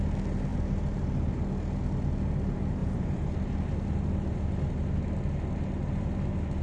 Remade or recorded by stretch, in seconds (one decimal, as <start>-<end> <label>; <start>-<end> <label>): 0.0-0.5 recorded; 0.5-1.2 remade; 1.2-2.8 recorded; 2.8-3.3 remade; 3.3-6.6 recorded